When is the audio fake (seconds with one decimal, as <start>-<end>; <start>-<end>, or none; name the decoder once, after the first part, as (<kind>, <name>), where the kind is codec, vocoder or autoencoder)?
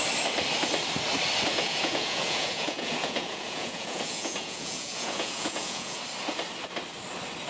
1.5-6.0 (vocoder, Vocos)